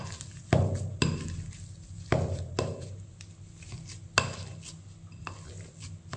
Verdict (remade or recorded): recorded